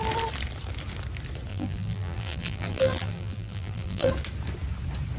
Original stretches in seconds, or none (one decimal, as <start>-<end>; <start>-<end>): 0.0-1.5; 4.1-5.2